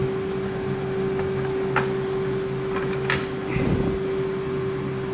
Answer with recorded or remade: recorded